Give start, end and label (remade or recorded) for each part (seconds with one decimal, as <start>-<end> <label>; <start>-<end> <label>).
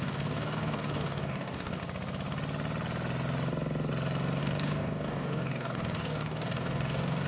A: 0.0-1.8 remade; 1.8-4.4 recorded; 4.4-7.3 remade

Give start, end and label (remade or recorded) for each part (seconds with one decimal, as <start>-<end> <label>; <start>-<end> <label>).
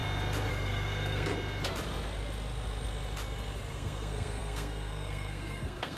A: 0.0-0.5 recorded; 0.5-1.3 remade; 1.3-3.7 recorded; 3.7-6.0 remade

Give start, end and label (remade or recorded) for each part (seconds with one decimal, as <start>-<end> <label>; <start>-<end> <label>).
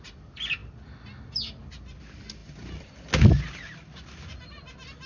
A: 0.0-5.1 recorded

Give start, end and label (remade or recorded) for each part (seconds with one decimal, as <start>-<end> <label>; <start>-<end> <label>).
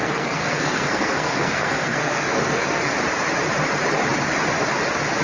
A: 0.0-2.9 remade; 2.9-5.2 recorded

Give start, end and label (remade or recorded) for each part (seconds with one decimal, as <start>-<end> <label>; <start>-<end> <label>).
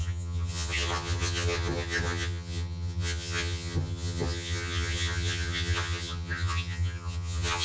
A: 0.0-7.6 remade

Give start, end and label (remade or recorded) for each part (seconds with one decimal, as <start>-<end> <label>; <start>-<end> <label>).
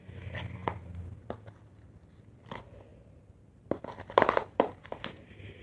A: 0.0-2.9 recorded; 2.9-3.8 remade; 3.8-4.4 recorded; 4.4-5.6 remade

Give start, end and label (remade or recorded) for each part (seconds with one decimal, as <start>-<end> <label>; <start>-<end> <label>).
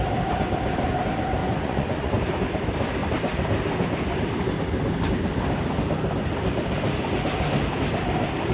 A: 0.0-1.4 recorded; 1.4-2.1 remade; 2.1-8.5 recorded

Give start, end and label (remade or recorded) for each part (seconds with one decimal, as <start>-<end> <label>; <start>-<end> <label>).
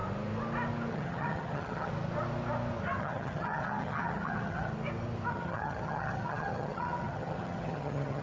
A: 0.0-0.9 recorded; 0.9-1.9 remade; 1.9-3.0 recorded; 3.0-4.7 remade; 4.7-5.3 recorded; 5.3-8.2 remade